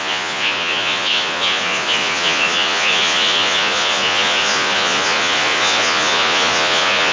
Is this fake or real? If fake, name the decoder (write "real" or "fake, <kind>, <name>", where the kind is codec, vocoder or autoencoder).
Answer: fake, vocoder, Vocos